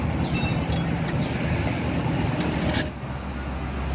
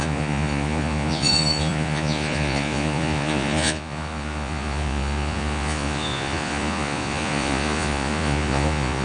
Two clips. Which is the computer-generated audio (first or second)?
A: second